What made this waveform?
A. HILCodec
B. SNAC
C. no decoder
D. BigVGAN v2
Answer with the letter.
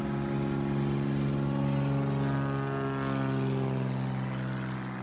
C